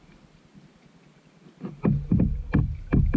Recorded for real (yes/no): yes